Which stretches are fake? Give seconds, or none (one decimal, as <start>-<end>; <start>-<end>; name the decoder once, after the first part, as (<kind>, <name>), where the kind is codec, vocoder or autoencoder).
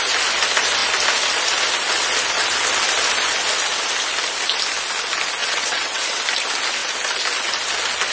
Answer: 5.4-6.2 (vocoder, WaveNeXt)